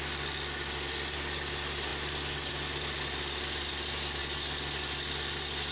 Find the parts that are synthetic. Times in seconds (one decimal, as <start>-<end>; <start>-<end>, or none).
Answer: none